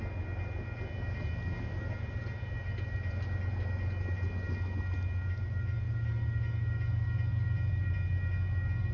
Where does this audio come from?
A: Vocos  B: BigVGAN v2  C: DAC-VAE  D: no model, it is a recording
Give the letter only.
D